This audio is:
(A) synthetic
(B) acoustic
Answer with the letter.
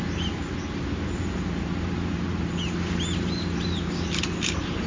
B